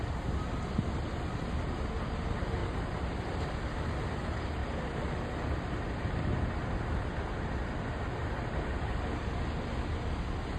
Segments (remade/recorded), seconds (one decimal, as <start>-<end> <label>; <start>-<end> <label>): 0.0-2.6 recorded; 2.6-3.9 remade; 3.9-10.6 recorded